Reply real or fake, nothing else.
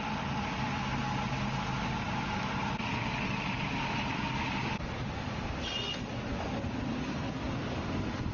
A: real